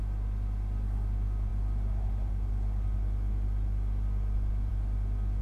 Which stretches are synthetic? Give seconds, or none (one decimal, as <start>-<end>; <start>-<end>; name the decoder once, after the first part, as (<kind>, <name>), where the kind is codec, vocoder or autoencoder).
none